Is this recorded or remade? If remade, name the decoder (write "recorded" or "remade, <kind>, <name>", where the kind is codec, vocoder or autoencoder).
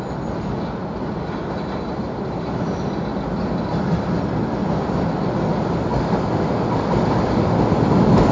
recorded